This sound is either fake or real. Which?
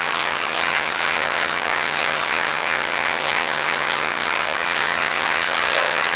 fake